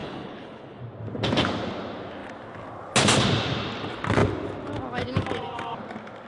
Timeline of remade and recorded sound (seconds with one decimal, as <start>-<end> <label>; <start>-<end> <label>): 0.0-0.8 remade; 0.8-6.3 recorded